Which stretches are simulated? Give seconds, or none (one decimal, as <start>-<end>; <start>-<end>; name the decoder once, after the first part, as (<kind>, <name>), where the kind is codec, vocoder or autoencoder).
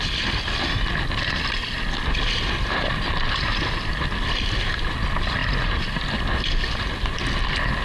none